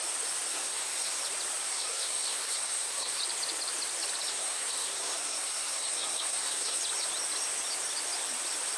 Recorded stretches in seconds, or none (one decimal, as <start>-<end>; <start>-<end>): 0.0-0.5; 1.2-1.6; 3.2-4.3; 6.8-8.8